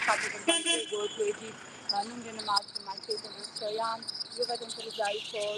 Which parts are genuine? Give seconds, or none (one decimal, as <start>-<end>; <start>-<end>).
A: 0.0-5.6